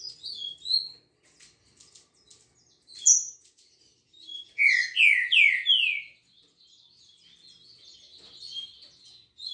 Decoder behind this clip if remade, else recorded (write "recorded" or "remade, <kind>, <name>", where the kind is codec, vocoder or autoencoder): recorded